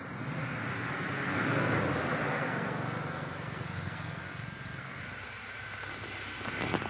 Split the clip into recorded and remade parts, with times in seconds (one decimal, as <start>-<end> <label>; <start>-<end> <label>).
0.0-0.7 recorded; 0.7-1.8 remade; 1.8-2.3 recorded; 2.3-5.0 remade; 5.0-6.9 recorded